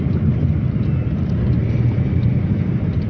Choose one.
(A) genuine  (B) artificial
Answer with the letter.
A